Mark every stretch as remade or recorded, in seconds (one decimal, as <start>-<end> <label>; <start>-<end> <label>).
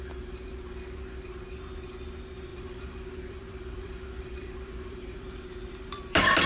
0.0-2.5 recorded; 2.5-6.5 remade